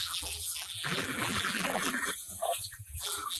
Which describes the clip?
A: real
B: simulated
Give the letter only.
B